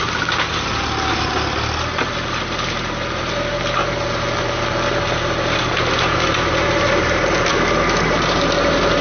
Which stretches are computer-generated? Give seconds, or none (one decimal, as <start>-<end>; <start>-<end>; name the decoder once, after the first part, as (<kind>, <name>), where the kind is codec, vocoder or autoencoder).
none